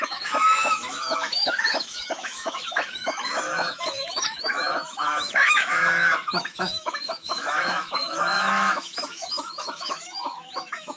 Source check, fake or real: fake